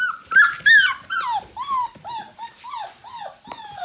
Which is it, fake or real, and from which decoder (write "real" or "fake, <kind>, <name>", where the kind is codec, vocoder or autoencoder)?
real